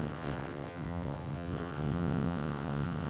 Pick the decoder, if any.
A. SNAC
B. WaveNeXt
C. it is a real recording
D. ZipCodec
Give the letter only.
B